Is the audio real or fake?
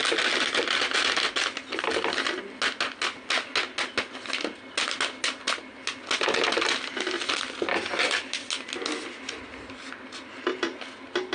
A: real